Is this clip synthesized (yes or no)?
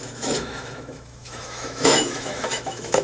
yes